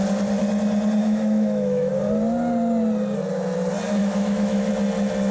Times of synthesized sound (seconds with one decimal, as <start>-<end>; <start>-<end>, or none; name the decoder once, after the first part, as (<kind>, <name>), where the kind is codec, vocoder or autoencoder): 1.0-1.9 (autoencoder, DAC-VAE); 4.0-4.7

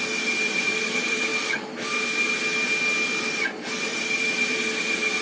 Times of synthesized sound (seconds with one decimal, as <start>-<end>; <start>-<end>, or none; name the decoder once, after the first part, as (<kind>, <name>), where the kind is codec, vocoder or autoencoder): 0.0-1.3 (vocoder, BigVGAN v2); 3.2-5.2

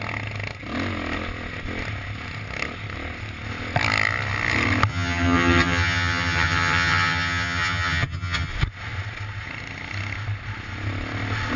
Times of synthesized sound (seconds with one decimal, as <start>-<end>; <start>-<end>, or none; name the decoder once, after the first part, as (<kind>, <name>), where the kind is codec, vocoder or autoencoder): 4.9-8.5 (vocoder, HiFi-GAN)

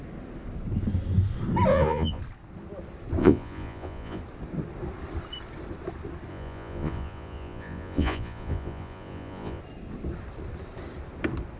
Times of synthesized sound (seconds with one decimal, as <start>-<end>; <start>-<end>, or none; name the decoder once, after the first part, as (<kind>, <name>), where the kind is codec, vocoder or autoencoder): 1.7-2.2 (vocoder, Vocos); 3.2-4.2; 6.3-9.6

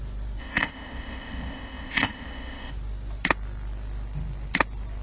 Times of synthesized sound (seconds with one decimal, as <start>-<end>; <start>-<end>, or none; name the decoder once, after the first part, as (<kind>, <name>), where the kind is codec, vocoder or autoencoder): 0.4-2.7 (codec, ZipCodec)

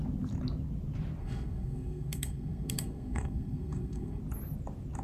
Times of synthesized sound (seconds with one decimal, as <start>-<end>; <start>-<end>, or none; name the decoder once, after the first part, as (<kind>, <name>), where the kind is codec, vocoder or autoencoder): 1.2-4.2 (codec, SNAC)

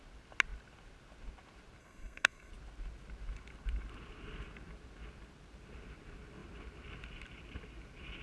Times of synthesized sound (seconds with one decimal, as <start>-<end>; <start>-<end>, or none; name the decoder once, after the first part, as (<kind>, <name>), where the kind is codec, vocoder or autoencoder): 1.8-2.5 (codec, SNAC)